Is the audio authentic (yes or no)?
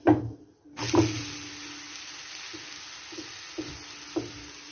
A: yes